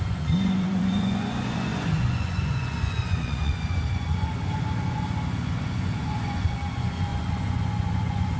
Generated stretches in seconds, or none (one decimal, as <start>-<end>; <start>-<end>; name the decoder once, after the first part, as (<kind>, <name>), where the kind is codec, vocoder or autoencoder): 0.0-8.4 (vocoder, Vocos)